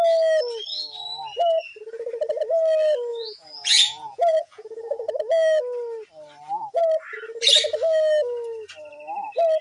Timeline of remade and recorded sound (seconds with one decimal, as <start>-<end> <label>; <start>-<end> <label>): 0.0-3.1 recorded; 3.1-5.1 remade; 5.1-9.6 recorded